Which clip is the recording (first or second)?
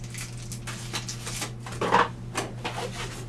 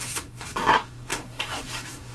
first